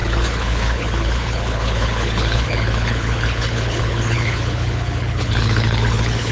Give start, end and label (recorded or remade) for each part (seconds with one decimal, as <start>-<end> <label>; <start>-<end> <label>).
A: 0.0-6.3 remade